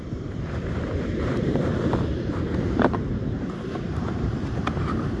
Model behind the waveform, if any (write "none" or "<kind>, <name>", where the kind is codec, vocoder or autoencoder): vocoder, BigVGAN v2